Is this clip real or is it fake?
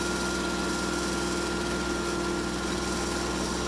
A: real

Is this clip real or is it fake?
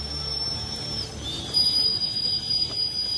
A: fake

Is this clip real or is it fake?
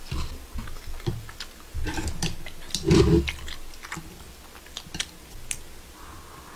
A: real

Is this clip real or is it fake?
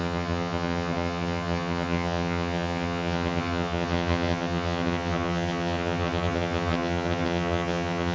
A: fake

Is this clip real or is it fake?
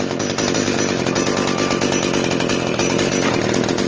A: real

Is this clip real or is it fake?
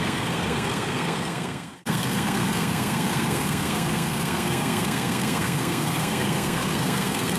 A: fake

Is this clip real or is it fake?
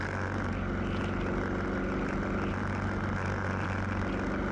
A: real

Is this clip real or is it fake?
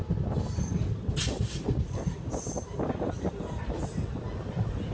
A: real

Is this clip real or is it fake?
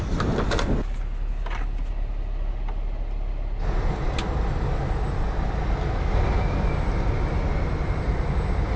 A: real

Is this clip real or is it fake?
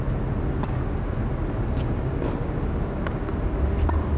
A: real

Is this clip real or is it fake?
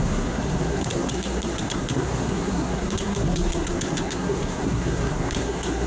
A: fake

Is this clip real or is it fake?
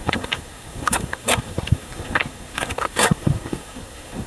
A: fake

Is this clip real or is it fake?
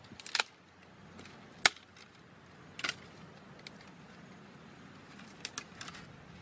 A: real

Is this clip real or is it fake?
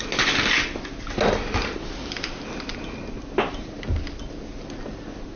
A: real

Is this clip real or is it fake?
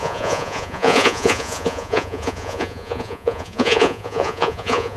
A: fake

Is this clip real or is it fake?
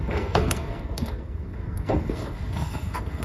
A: fake